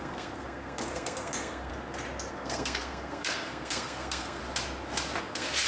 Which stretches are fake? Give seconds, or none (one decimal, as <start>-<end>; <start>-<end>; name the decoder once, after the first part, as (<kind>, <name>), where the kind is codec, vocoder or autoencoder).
0.0-1.7 (codec, SNAC); 2.3-4.4; 5.2-5.7